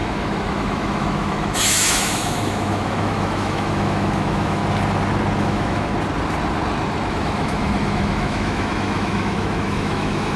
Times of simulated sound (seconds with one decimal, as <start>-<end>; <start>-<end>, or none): 0.0-4.6; 5.4-5.9; 7.1-10.4